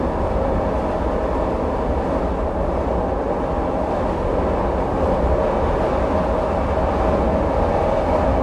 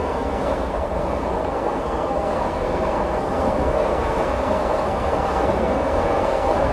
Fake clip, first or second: second